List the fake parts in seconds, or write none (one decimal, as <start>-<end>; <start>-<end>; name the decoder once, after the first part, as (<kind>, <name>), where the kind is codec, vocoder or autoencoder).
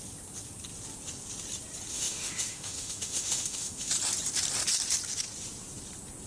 1.9-3.9 (autoencoder, DAC-VAE)